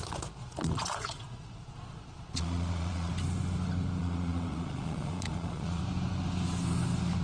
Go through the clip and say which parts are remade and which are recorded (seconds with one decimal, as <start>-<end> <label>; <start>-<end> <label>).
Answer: 0.0-0.4 recorded; 0.4-3.1 remade; 3.1-4.0 recorded; 4.0-5.8 remade; 5.8-7.2 recorded